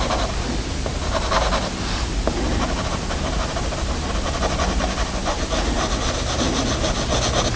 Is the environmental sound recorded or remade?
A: recorded